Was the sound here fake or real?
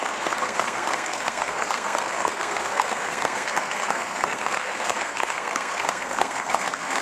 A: fake